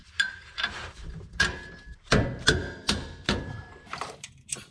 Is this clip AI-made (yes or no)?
yes